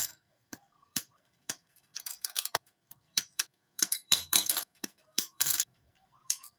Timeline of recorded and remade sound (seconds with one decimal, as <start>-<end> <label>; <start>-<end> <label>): 0.0-6.6 remade